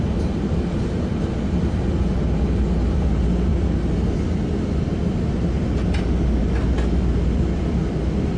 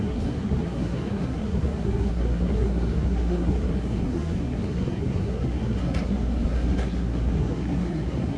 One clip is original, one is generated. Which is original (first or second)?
first